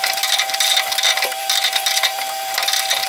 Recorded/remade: remade